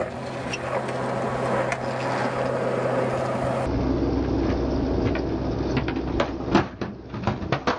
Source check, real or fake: real